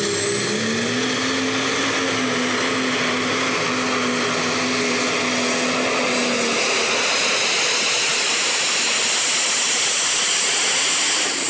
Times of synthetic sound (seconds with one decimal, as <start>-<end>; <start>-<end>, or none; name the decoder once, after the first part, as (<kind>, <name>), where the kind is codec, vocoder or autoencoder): none